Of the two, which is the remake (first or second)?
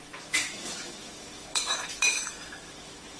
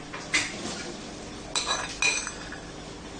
first